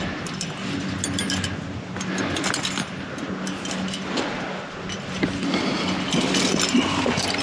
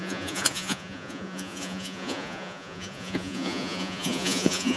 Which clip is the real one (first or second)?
first